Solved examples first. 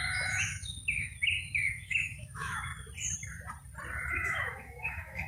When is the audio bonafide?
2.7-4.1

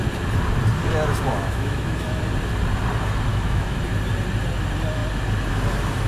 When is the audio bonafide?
0.0-1.3; 2.2-3.3; 3.8-6.1